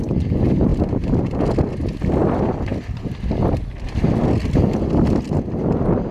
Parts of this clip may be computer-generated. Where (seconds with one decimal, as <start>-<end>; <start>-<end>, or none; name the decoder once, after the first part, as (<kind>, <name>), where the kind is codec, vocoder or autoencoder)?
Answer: none